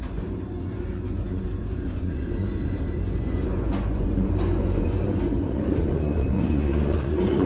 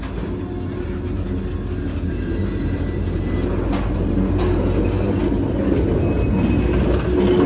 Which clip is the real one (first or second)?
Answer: second